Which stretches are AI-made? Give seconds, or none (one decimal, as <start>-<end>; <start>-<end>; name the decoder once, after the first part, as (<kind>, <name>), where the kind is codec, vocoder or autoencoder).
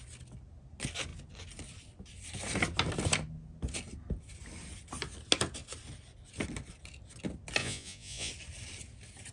7.6-8.3 (vocoder, Vocos)